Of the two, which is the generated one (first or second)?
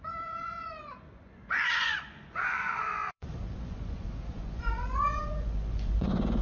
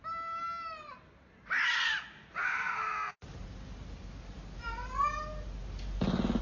first